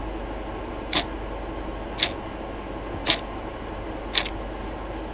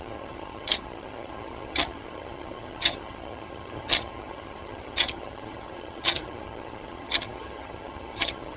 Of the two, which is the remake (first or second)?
second